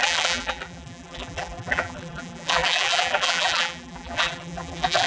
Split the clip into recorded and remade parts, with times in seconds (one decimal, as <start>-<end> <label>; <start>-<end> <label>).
0.0-5.1 remade